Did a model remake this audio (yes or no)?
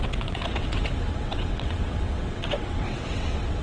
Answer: yes